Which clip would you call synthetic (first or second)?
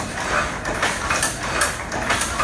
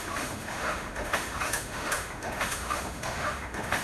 second